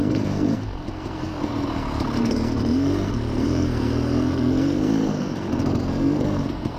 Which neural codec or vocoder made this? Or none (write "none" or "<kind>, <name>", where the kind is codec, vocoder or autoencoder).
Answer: codec, SNAC